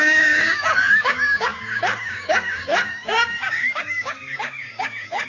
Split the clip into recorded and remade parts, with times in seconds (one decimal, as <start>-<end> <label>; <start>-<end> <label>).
0.0-5.3 remade